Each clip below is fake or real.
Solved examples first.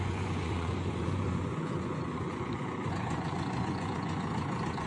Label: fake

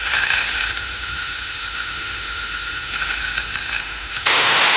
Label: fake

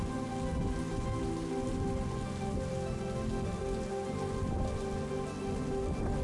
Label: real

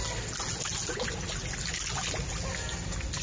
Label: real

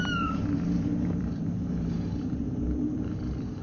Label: fake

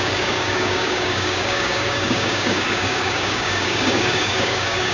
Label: fake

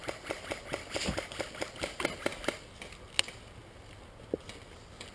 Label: real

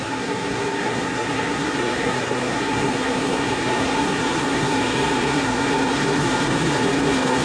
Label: fake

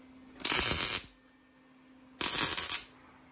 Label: real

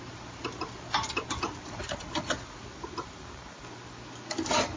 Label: real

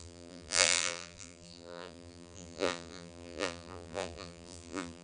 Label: fake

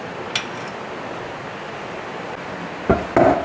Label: real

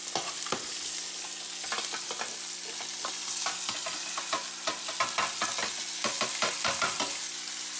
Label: real